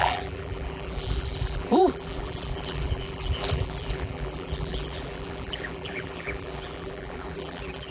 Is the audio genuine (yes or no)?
no